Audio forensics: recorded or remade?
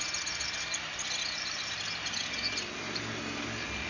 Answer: recorded